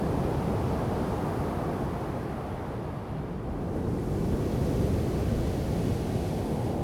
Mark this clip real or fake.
real